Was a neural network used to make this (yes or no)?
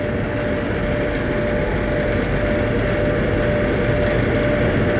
no